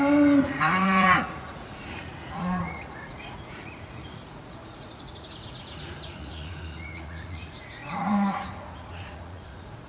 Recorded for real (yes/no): no